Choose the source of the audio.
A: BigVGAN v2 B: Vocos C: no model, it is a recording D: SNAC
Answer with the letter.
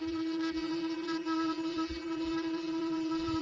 A